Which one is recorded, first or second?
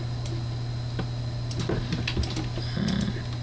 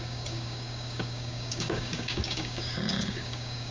first